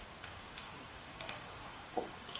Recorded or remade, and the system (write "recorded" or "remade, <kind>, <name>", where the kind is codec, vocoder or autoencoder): remade, codec, DAC